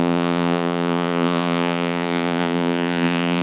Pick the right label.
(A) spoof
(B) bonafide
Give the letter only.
A